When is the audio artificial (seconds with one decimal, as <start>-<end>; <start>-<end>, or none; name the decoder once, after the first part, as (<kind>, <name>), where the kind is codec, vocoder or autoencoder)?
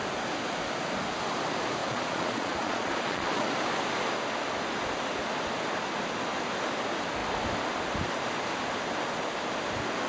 1.8-3.5 (vocoder, Vocos)